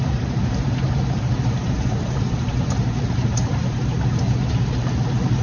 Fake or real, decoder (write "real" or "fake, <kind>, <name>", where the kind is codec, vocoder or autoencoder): fake, vocoder, BigVGAN v2